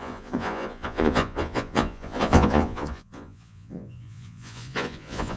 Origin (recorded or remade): remade